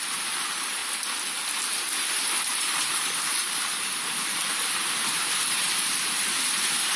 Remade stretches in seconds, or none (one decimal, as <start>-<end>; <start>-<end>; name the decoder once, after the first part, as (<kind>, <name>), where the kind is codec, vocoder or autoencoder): 0.0-0.8 (vocoder, BigVGAN v2); 2.1-7.0